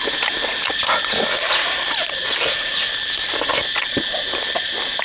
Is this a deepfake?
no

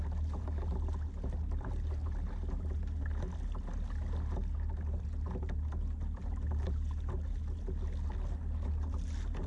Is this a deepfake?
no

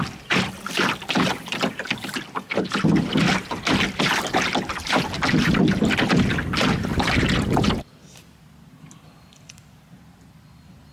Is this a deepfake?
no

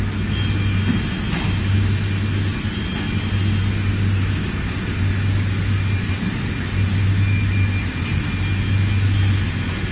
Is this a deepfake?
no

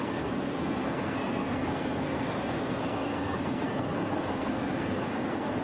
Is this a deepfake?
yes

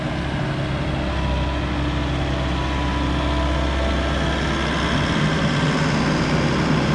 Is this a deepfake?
no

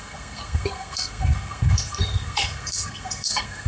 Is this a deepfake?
yes